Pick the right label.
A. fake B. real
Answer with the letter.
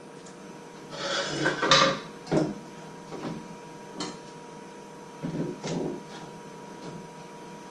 B